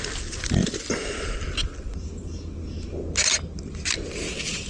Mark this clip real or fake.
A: real